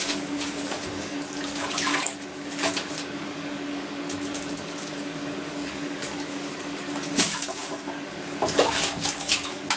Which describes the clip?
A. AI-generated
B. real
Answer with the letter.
A